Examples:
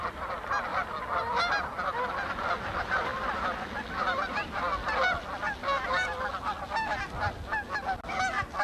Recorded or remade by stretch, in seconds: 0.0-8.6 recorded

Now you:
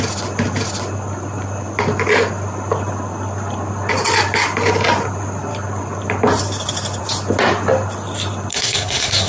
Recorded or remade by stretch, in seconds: 0.0-8.5 recorded; 8.5-9.3 remade

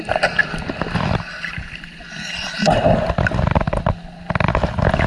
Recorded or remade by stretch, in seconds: 0.0-5.1 recorded

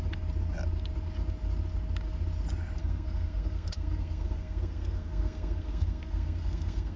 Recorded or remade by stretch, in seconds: 0.0-2.8 recorded; 2.8-7.0 remade